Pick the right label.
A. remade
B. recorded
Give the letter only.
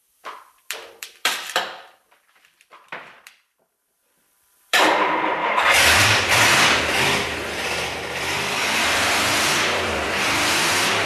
A